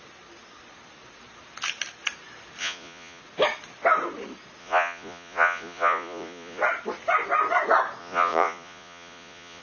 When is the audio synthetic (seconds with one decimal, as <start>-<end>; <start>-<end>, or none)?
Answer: 2.6-3.2; 4.6-6.6; 8.0-9.6

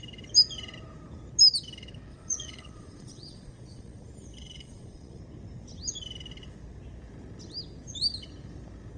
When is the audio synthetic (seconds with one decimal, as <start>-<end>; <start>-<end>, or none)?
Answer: 2.1-5.2

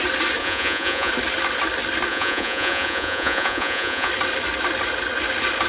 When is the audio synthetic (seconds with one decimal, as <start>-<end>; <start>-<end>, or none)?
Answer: 0.4-1.1; 2.1-4.1

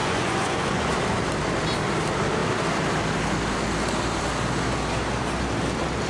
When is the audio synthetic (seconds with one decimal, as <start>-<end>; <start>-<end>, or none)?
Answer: 0.0-0.9

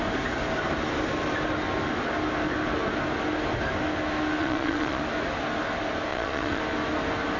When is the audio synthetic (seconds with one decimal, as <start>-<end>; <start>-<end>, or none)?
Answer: 4.4-5.0; 6.1-6.6

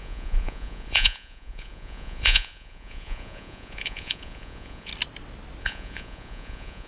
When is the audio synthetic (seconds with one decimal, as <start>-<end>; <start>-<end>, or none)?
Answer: 0.0-4.9; 5.6-6.9

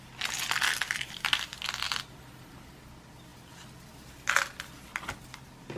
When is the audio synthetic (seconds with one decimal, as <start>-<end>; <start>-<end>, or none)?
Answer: none